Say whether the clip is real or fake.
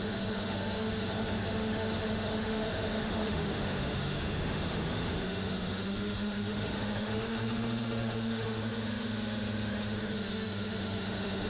fake